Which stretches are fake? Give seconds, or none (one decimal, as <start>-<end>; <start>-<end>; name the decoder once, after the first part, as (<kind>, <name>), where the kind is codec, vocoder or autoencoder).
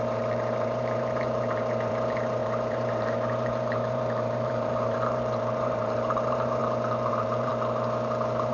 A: 0.0-6.6 (vocoder, BigVGAN v2); 7.1-7.5